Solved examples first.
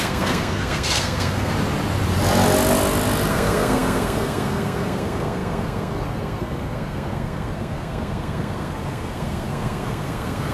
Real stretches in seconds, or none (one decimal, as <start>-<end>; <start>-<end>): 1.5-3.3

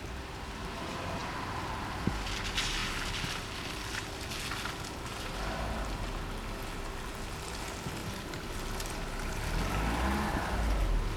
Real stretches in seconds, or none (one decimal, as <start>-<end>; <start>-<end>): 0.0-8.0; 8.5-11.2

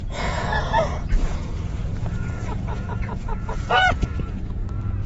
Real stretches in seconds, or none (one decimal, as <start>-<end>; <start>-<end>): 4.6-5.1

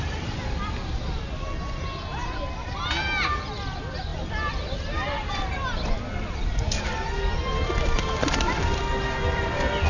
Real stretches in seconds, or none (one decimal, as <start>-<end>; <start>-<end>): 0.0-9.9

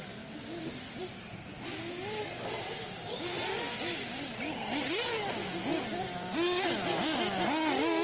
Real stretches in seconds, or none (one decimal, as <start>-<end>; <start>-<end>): 0.0-8.0

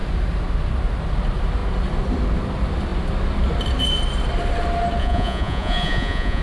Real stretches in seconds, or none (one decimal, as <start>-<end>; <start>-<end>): 0.0-5.0

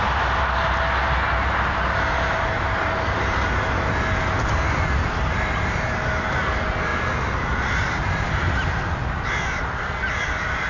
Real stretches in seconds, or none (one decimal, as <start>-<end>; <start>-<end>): 0.0-10.7

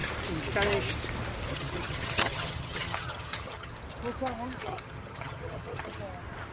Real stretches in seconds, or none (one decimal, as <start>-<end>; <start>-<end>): 0.0-1.5; 3.7-4.6; 6.0-6.5